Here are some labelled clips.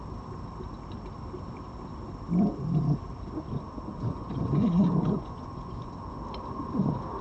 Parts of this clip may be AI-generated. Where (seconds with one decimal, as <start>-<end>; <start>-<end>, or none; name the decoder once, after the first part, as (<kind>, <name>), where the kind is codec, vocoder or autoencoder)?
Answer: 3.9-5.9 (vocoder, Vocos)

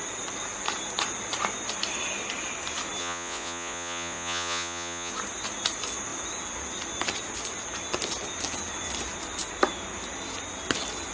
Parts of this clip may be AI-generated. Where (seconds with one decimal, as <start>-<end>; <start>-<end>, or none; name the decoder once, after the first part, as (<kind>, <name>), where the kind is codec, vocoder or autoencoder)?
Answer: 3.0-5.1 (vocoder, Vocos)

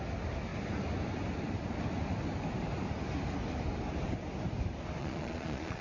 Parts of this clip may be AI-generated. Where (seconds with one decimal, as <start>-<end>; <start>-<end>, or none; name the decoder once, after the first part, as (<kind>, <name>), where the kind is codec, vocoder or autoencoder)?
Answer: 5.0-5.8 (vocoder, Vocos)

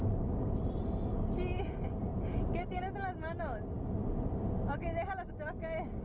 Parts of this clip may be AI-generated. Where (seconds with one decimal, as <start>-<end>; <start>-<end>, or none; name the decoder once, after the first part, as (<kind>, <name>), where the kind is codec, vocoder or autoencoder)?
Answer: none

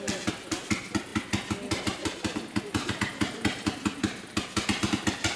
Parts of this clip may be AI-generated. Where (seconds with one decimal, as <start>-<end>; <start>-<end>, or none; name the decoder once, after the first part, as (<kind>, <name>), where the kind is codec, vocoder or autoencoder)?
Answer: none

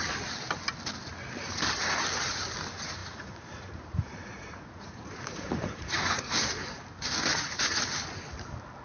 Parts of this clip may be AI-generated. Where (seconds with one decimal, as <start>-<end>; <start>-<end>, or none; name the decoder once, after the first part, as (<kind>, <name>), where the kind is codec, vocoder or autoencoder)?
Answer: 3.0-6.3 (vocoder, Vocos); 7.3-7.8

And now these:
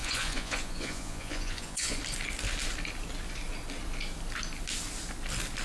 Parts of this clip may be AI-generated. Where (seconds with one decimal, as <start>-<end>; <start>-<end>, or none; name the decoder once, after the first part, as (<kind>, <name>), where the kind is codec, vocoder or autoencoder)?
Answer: 0.0-2.0 (vocoder, Vocos)

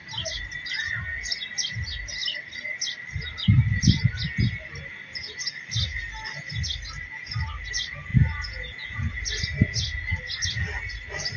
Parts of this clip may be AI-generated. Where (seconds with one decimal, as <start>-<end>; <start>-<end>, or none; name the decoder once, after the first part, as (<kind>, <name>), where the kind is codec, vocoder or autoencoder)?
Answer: 8.1-9.1 (vocoder, Vocos)